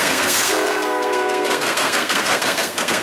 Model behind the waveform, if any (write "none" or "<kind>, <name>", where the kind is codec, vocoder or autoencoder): codec, SNAC